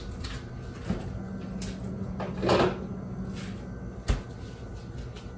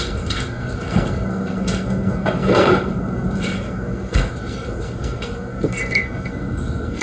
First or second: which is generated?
second